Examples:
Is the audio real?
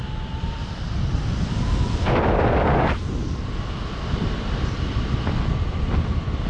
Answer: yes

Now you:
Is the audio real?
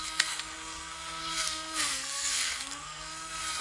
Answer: no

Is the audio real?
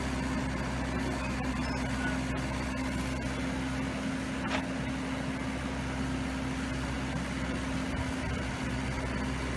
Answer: yes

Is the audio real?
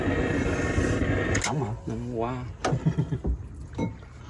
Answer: yes